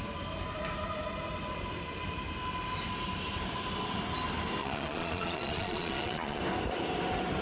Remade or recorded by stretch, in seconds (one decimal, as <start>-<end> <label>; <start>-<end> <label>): 0.0-4.6 recorded; 4.6-6.4 remade; 6.4-7.4 recorded

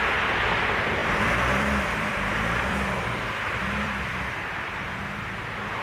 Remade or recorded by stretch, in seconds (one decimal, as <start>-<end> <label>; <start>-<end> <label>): 0.0-1.0 recorded; 1.0-4.5 remade; 4.5-5.8 recorded

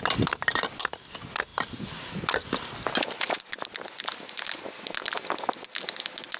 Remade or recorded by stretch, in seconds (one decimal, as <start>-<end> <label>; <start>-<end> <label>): 0.0-6.4 recorded

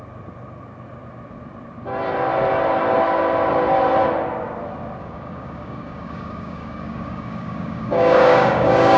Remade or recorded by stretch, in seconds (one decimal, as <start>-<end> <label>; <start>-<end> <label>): 0.0-5.0 recorded; 5.0-9.0 remade

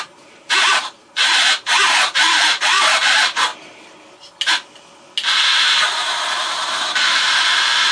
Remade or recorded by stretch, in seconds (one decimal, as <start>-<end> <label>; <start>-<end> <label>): 0.0-3.5 remade; 3.5-5.4 recorded; 5.4-7.9 remade

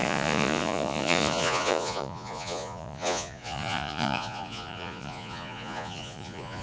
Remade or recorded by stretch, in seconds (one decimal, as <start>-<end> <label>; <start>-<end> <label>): 0.0-6.6 remade

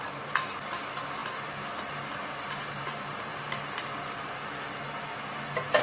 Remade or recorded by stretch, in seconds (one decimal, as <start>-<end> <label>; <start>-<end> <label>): 0.0-5.8 recorded

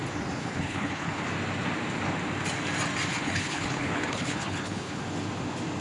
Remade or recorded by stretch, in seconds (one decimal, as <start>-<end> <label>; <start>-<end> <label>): 0.0-0.4 recorded; 0.4-1.2 remade; 1.2-3.1 recorded; 3.1-5.0 remade; 5.0-5.8 recorded